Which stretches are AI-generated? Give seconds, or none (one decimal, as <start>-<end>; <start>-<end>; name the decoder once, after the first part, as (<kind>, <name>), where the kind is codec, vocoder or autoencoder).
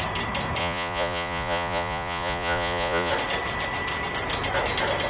0.6-3.1 (vocoder, Vocos)